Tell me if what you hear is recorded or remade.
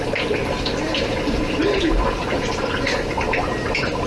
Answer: remade